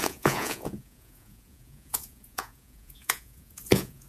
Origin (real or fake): fake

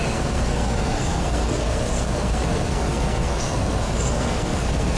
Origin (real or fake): fake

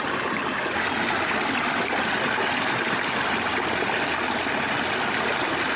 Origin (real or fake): real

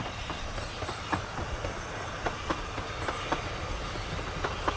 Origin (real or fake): real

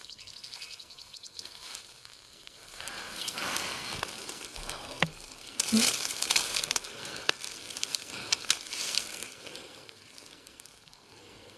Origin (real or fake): fake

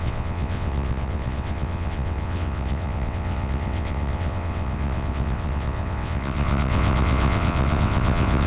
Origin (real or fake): fake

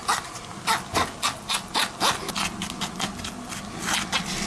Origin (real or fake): real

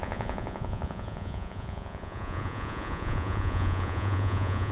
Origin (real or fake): fake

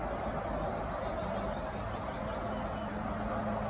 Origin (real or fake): real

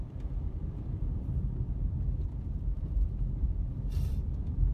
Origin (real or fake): fake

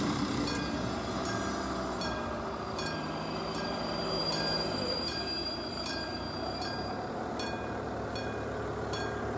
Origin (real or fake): real